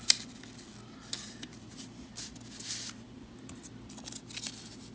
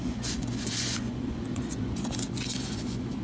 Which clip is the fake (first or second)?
second